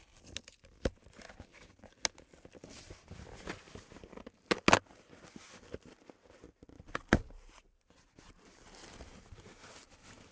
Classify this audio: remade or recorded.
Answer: recorded